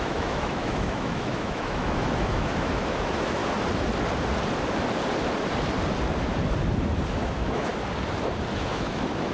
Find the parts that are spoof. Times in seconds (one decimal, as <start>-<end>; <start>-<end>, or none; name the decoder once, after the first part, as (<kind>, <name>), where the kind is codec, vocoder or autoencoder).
0.0-3.4 (autoencoder, DAC-VAE); 7.1-7.7; 8.5-9.3